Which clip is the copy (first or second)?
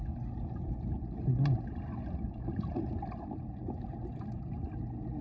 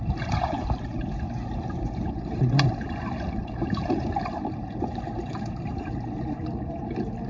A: second